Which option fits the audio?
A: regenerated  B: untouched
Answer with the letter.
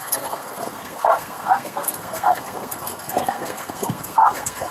A